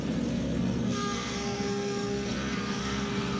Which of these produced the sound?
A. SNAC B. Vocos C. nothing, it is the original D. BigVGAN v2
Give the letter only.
A